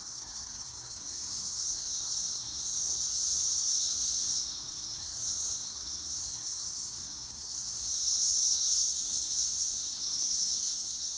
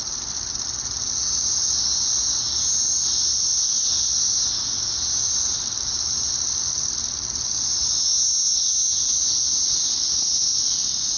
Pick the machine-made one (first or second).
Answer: first